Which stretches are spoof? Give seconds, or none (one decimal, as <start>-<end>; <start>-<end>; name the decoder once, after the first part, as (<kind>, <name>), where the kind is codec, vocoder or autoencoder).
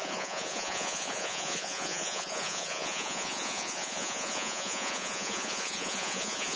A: 0.0-6.6 (vocoder, Vocos)